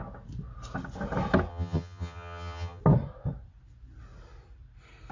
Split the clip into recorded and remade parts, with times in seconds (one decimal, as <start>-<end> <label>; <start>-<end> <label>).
0.0-1.5 recorded; 1.5-2.8 remade; 2.8-5.1 recorded